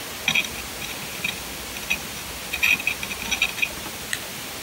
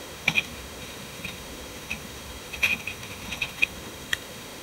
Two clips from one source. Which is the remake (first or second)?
second